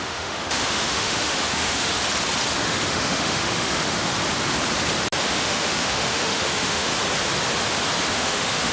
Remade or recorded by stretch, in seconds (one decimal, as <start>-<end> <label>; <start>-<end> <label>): 0.0-1.9 remade; 1.9-2.6 recorded; 2.6-4.1 remade; 4.1-5.2 recorded; 5.2-6.9 remade; 6.9-8.1 recorded; 8.1-8.7 remade